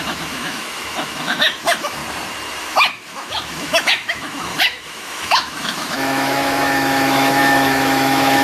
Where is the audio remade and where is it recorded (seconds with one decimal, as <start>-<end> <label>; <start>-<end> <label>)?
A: 0.0-2.0 remade; 2.0-2.6 recorded; 2.6-8.4 remade